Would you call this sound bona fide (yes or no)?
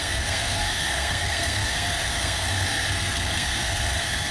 no